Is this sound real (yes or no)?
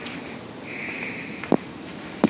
yes